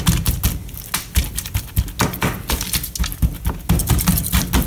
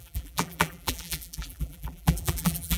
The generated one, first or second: second